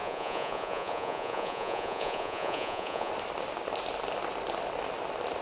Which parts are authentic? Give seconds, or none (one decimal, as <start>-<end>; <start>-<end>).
3.1-5.4